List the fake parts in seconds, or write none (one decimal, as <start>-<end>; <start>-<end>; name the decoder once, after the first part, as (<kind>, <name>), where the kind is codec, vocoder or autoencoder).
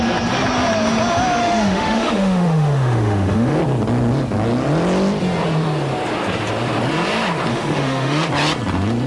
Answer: 1.4-3.6 (autoencoder, DAC-VAE); 7.5-8.3